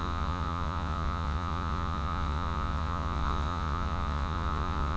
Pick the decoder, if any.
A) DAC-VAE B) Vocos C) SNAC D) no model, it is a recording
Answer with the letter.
B